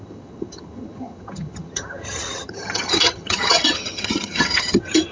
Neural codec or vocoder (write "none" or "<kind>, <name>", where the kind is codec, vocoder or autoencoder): vocoder, HiFi-GAN